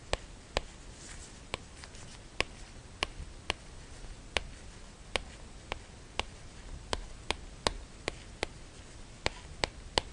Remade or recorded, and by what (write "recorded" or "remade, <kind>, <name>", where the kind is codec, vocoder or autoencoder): recorded